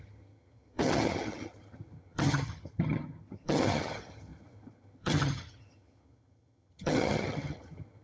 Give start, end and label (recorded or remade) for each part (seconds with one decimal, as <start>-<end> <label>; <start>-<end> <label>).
0.0-8.0 remade